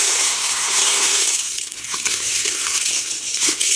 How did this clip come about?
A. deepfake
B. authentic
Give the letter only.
A